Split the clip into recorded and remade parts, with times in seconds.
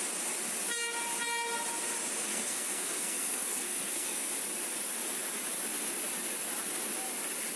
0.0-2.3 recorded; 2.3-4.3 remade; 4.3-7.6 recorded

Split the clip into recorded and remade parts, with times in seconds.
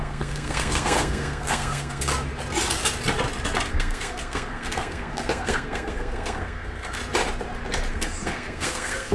0.0-2.1 remade; 2.1-3.7 recorded; 3.7-7.0 remade; 7.0-7.9 recorded; 7.9-9.1 remade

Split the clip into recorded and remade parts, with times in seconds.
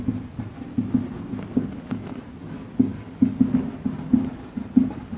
0.0-5.2 recorded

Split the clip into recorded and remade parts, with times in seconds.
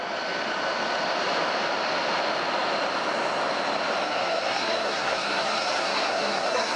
0.0-4.0 recorded; 4.0-6.8 remade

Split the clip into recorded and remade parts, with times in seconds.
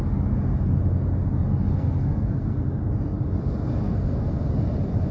0.0-1.7 recorded; 1.7-2.6 remade; 2.6-3.8 recorded; 3.8-4.4 remade; 4.4-5.1 recorded